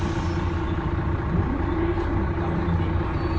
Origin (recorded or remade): recorded